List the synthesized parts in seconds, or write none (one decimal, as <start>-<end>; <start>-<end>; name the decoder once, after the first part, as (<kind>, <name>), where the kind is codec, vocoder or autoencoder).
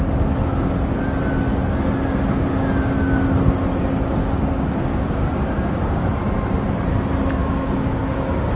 4.2-6.1 (codec, DAC); 7.4-8.6